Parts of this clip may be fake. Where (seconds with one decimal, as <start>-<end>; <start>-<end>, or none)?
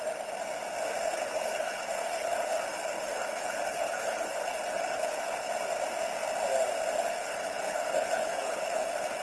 1.0-5.5; 7.0-9.2